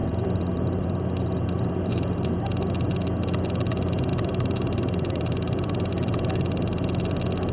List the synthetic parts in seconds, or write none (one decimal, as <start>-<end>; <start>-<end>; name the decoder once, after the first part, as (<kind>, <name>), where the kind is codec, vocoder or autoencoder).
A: 0.0-2.7 (vocoder, BigVGAN v2); 4.1-5.9